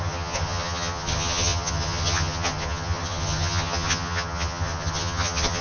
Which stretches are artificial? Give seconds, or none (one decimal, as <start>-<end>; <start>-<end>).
0.0-5.6